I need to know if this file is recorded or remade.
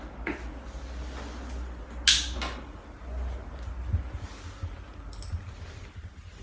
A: recorded